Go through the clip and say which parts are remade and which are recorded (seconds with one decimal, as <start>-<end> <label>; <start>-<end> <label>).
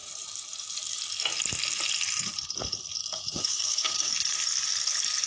0.0-3.0 recorded; 3.0-4.1 remade; 4.1-5.3 recorded